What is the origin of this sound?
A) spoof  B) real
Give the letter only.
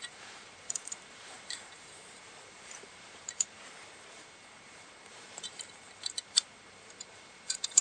A